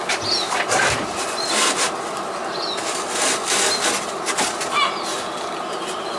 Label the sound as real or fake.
real